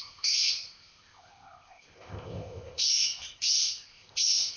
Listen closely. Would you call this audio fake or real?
fake